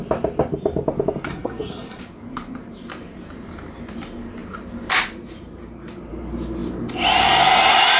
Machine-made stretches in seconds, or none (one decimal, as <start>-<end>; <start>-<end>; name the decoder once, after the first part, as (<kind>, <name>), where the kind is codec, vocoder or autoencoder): 1.3-2.0 (codec, SNAC)